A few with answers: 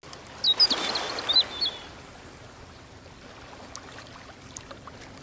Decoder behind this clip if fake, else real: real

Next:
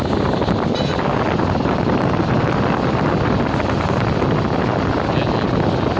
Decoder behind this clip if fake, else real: real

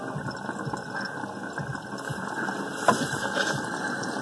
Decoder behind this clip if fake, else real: real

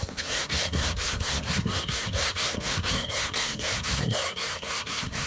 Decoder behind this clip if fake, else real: fake, codec, SNAC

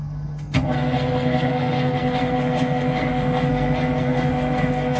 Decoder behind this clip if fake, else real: fake, codec, SNAC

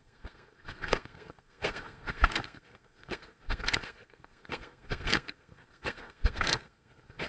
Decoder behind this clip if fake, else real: fake, codec, SNAC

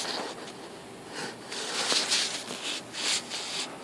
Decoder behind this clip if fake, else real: real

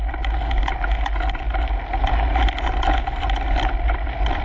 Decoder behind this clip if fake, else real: real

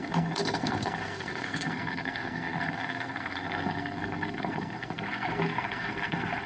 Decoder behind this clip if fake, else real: fake, codec, SNAC